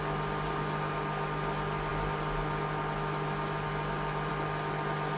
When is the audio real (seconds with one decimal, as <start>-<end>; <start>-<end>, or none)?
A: 0.0-5.2